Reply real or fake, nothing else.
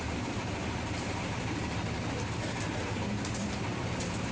real